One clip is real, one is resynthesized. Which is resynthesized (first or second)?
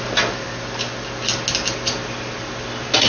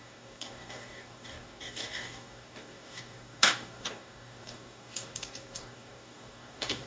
second